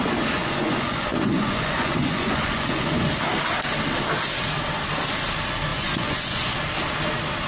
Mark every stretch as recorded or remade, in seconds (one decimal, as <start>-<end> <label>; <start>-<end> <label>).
0.0-0.4 recorded; 0.4-3.1 remade; 3.1-5.7 recorded; 5.7-6.5 remade; 6.5-7.5 recorded